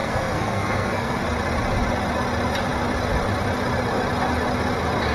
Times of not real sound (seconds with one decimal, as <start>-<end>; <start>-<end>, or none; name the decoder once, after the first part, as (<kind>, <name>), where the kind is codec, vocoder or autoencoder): 0.0-1.2 (codec, SNAC)

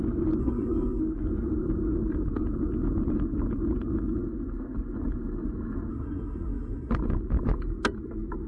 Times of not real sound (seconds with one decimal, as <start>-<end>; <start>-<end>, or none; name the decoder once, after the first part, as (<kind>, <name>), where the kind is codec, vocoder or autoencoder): 0.4-1.0 (codec, SNAC); 5.9-6.9

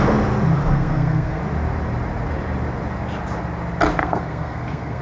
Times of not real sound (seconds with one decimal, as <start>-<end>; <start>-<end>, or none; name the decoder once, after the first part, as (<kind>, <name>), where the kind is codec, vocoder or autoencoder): 0.6-1.4 (codec, SNAC); 4.0-5.0

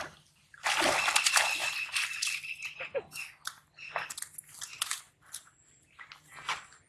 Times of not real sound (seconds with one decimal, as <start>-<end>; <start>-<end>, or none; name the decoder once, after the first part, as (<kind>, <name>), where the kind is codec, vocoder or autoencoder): none

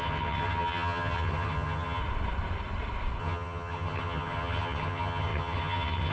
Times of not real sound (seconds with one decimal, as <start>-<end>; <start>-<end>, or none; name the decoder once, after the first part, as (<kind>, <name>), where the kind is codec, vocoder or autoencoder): 0.0-2.0 (vocoder, HiFi-GAN); 3.2-6.1

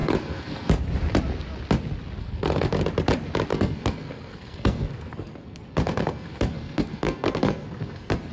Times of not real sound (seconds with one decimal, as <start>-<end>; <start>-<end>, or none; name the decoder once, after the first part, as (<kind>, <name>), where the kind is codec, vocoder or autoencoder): 0.0-0.7 (codec, SNAC); 2.2-2.8; 3.5-8.3

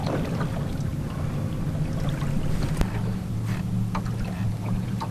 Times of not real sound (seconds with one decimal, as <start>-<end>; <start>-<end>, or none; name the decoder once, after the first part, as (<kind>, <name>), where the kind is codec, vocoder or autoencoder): 0.0-0.9 (vocoder, BigVGAN v2); 4.0-5.1